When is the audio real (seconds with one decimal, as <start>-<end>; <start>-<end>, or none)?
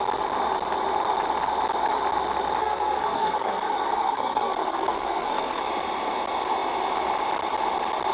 0.0-2.6; 5.6-8.1